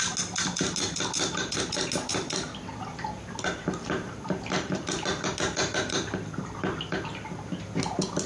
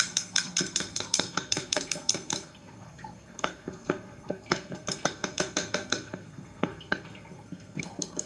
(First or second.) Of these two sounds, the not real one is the second